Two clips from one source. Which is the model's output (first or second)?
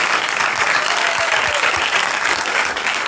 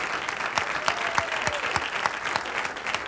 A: first